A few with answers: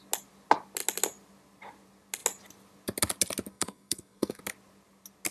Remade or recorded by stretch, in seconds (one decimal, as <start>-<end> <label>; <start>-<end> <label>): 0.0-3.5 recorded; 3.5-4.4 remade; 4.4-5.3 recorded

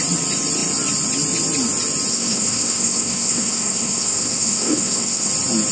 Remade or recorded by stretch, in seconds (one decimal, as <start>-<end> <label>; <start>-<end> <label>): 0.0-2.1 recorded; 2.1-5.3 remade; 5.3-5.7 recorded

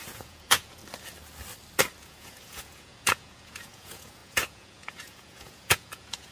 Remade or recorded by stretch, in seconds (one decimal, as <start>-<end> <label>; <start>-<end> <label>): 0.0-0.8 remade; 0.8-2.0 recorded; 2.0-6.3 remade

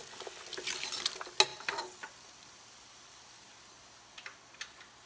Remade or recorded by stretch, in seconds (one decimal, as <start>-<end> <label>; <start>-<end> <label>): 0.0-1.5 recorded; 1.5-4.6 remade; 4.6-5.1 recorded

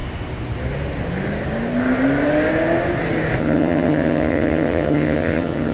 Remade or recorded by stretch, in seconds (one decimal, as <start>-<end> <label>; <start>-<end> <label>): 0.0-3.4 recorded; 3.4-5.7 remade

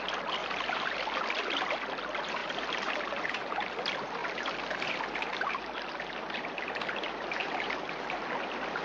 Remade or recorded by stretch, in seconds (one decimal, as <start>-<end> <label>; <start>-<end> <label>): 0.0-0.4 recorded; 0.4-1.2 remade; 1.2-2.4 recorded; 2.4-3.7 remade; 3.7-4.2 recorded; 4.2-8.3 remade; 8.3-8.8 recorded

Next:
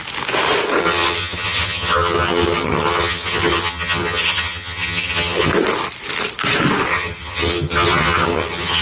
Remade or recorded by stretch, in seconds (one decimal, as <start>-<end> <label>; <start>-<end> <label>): 0.0-0.8 recorded; 0.8-5.5 remade; 5.5-6.9 recorded; 6.9-8.8 remade

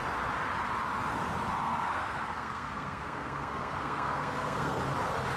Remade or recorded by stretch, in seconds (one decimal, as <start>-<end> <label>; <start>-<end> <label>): 0.0-1.6 recorded; 1.6-4.8 remade; 4.8-5.4 recorded